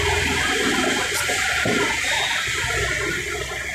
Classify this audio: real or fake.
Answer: real